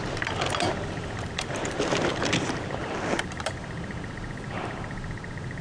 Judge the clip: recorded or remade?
recorded